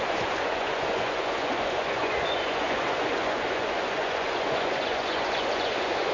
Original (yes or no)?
no